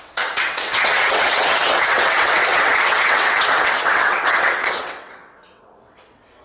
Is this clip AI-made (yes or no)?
yes